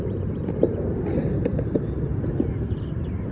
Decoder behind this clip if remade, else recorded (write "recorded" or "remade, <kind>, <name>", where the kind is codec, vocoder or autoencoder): remade, vocoder, BigVGAN v2